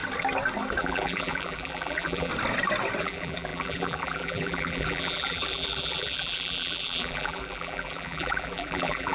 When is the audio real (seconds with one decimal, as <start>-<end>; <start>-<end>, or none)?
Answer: 0.0-0.8; 2.3-3.0

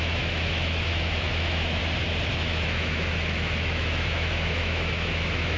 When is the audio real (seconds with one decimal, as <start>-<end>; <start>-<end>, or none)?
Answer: 1.8-2.3

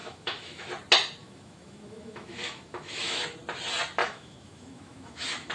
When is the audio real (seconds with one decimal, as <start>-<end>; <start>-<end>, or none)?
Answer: 0.7-1.2; 3.2-4.0

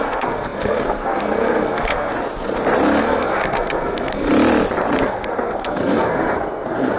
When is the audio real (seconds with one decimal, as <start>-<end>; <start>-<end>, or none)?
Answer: 2.1-3.0; 4.3-5.0

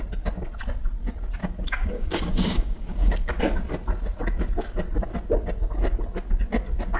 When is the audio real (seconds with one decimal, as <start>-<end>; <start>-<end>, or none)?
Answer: 0.0-1.4; 3.4-7.0

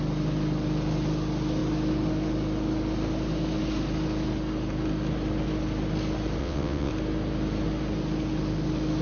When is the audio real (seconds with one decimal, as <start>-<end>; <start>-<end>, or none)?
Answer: 0.0-6.4; 6.9-9.0